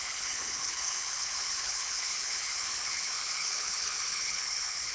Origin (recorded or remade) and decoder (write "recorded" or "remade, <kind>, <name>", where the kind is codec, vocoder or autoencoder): remade, codec, HILCodec